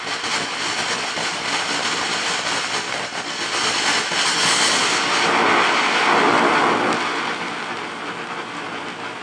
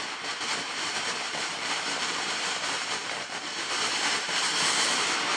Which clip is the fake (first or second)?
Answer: second